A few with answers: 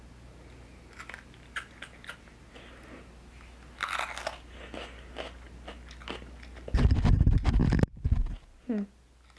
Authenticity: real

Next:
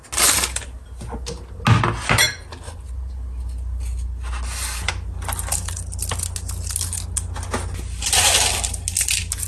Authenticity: real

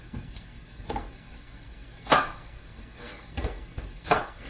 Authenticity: fake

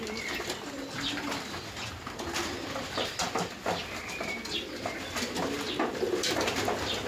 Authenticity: real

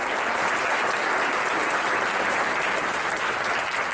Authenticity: real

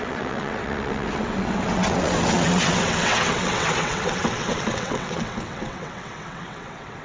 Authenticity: fake